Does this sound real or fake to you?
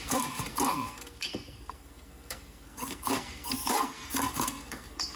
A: fake